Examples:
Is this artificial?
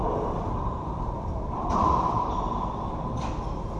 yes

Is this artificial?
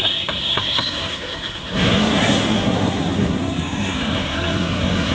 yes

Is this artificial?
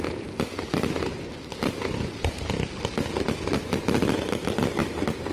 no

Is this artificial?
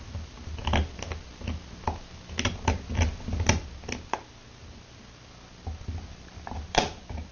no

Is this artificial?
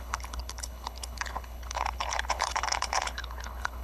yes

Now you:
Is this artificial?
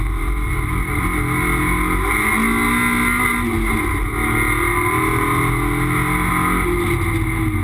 no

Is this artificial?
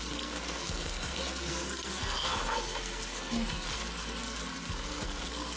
yes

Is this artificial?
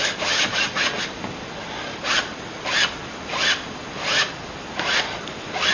no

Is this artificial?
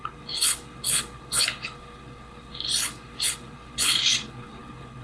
yes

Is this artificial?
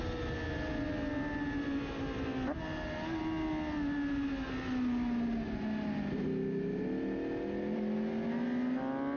no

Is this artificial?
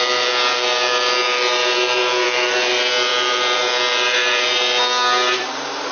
yes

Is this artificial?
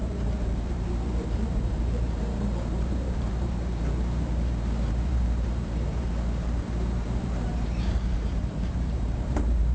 yes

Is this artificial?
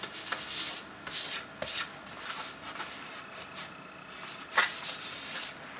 no